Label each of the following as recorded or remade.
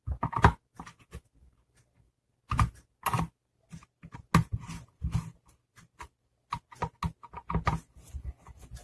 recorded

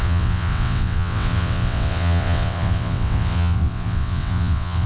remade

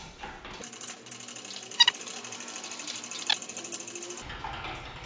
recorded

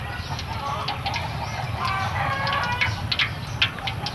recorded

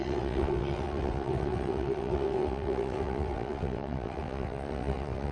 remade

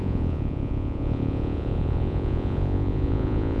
remade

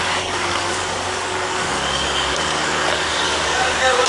remade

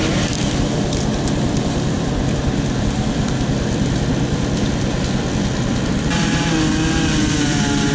recorded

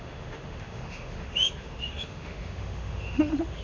remade